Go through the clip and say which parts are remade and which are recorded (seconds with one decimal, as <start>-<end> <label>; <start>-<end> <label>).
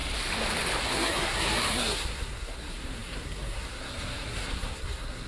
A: 0.0-0.8 recorded; 0.8-5.3 remade